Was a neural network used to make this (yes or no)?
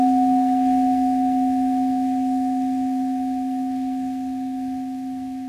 yes